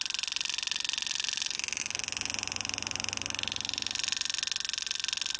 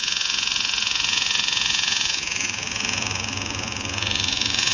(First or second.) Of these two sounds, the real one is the first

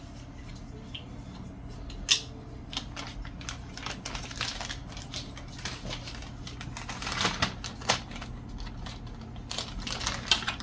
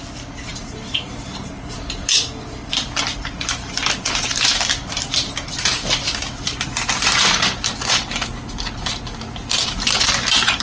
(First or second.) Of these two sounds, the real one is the first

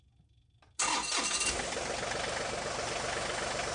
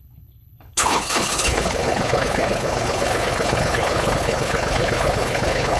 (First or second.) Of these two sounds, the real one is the first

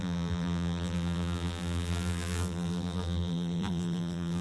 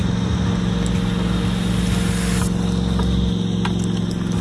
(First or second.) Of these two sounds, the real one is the second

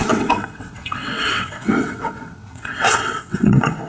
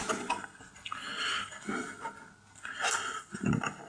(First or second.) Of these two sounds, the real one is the second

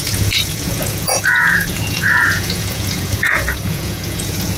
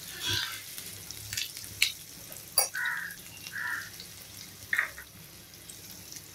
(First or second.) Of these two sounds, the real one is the second